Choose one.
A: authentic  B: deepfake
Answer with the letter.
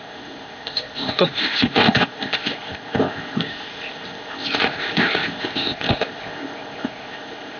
B